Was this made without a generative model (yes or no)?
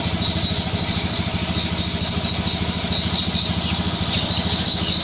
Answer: yes